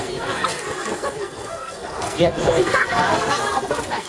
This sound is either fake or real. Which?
fake